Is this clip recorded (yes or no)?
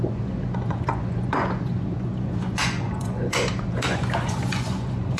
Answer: no